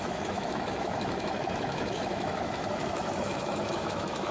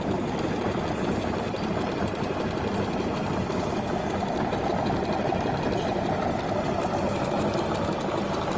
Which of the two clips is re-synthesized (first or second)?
first